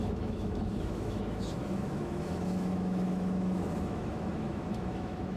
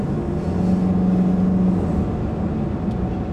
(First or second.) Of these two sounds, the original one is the second